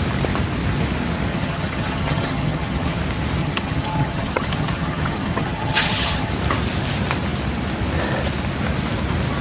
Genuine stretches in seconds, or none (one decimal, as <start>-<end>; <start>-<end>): 0.0-1.3; 3.0-3.4; 6.3-9.4